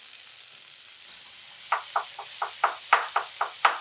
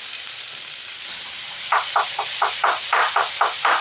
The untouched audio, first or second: first